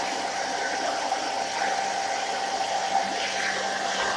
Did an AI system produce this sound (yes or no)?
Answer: no